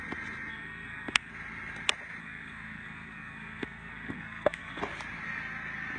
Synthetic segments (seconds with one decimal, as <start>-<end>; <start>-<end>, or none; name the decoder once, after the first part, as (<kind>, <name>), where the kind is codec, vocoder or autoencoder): 0.5-1.3 (codec, SNAC); 2.2-4.8